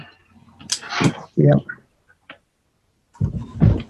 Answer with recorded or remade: recorded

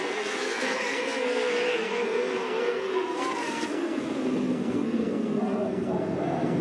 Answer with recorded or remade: remade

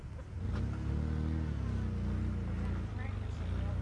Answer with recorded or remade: recorded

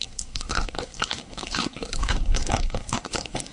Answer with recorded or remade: remade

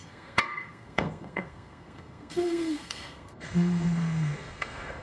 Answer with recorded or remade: remade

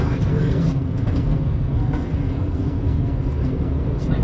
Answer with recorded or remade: remade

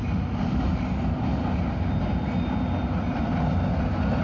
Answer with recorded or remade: recorded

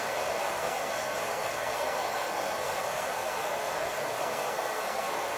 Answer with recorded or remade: remade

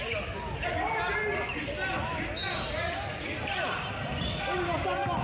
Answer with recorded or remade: recorded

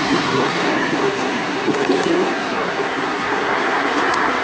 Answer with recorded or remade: remade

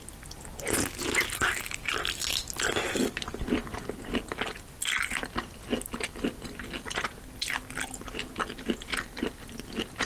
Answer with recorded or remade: recorded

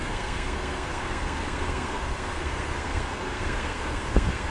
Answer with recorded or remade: remade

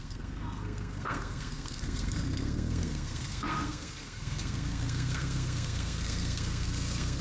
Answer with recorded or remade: remade